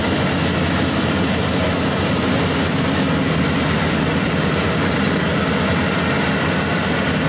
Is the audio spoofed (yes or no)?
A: no